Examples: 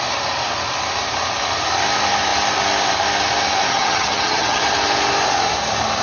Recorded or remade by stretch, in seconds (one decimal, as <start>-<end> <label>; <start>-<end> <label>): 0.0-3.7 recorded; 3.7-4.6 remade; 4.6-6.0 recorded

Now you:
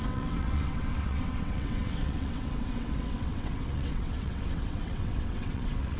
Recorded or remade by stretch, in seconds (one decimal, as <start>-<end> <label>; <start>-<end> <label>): 0.0-6.0 remade

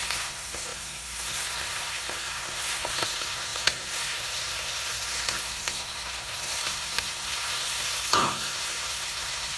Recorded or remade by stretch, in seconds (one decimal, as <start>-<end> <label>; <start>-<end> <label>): 0.0-9.6 remade

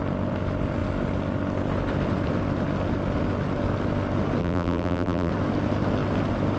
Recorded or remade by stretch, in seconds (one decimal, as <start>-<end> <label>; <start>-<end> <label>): 0.0-4.4 recorded; 4.4-5.3 remade; 5.3-6.6 recorded

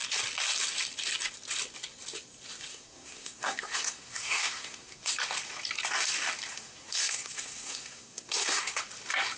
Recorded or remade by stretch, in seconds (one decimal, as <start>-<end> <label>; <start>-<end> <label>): 0.0-2.7 recorded; 2.7-5.1 remade; 5.1-6.5 recorded; 6.5-8.8 remade; 8.8-9.4 recorded

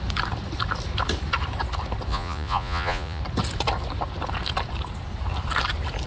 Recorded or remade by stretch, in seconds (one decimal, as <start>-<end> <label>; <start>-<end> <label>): 0.0-2.1 recorded; 2.1-3.2 remade; 3.2-6.1 recorded

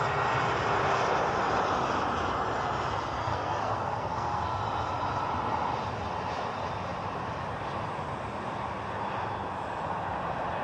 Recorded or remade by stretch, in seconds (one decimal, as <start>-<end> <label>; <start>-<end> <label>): 0.0-3.2 recorded; 3.2-4.6 remade; 4.6-10.6 recorded

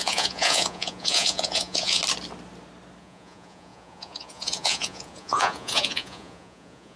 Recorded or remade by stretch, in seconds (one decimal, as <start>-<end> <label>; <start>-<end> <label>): 0.0-2.0 remade; 2.0-3.0 recorded; 3.0-7.0 remade